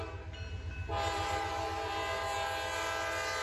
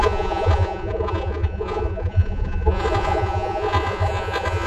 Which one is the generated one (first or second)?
second